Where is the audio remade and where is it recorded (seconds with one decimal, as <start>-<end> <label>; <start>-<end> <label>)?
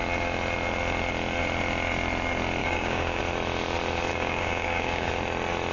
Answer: 0.0-2.6 recorded; 2.6-3.2 remade; 3.2-4.1 recorded; 4.1-5.1 remade; 5.1-5.7 recorded